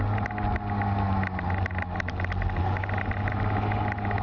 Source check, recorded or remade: recorded